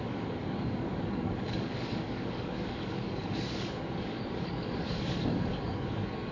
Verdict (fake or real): fake